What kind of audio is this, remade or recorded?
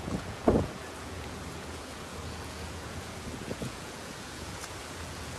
remade